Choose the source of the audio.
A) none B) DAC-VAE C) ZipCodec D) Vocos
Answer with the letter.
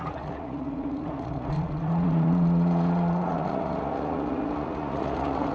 D